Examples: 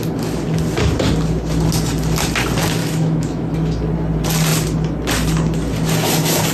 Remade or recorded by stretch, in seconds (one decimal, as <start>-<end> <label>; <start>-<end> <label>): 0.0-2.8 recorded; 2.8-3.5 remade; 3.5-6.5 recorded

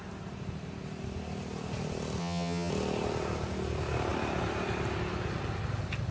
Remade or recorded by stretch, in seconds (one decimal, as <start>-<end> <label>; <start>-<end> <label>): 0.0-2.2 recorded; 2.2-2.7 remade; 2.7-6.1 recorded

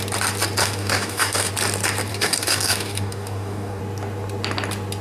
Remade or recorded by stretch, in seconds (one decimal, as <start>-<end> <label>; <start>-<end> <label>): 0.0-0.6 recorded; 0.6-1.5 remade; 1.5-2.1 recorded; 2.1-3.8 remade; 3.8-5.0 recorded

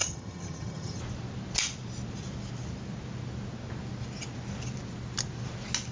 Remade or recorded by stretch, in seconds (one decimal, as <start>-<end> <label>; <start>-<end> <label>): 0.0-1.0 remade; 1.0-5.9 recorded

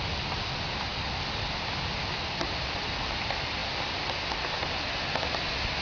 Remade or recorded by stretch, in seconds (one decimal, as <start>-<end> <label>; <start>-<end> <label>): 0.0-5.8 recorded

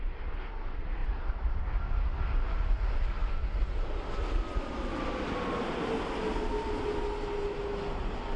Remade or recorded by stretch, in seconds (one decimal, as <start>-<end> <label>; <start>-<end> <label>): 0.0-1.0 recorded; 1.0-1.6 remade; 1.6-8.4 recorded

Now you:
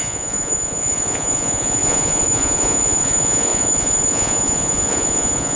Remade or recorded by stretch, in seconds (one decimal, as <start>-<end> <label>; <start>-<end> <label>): 0.0-5.6 remade

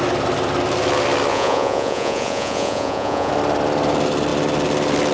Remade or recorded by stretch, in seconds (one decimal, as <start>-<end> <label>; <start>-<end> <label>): 0.0-1.3 recorded; 1.3-3.3 remade; 3.3-5.1 recorded